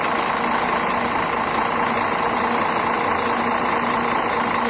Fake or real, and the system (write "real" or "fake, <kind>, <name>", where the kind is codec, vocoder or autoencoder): real